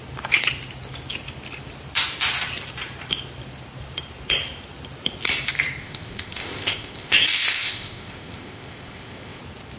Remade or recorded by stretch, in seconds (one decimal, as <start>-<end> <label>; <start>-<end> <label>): 0.0-5.8 recorded; 5.8-9.4 remade; 9.4-9.8 recorded

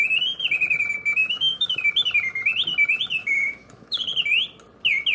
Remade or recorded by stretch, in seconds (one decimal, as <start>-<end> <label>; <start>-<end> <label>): 0.0-1.2 recorded; 1.2-1.8 remade; 1.8-3.2 recorded; 3.2-4.0 remade; 4.0-5.1 recorded